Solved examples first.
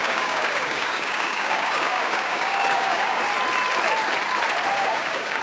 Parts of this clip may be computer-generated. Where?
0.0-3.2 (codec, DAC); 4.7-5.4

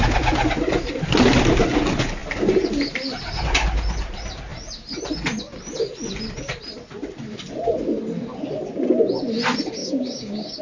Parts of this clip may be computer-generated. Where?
9.8-10.6 (codec, DAC)

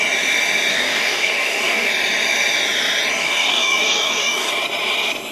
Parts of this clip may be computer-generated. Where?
0.7-1.9 (codec, DAC); 3.2-4.5

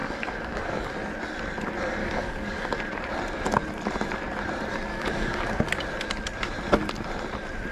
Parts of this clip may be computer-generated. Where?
0.0-0.9 (codec, DAC); 2.0-2.8; 4.9-5.6

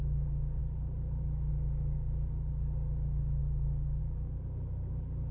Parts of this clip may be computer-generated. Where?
0.0-5.3 (codec, DAC)